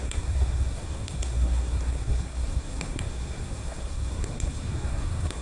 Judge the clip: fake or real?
fake